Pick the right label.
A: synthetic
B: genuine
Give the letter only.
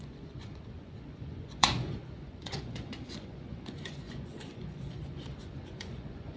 A